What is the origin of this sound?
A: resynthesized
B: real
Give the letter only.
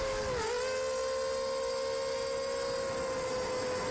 B